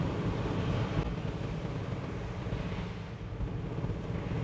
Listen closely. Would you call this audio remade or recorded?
remade